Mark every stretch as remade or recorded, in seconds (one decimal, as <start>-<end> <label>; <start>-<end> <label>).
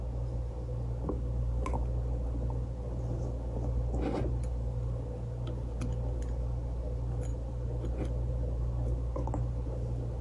0.0-10.2 recorded